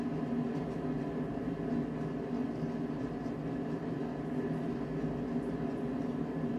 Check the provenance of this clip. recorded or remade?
recorded